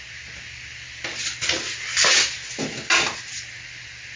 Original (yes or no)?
yes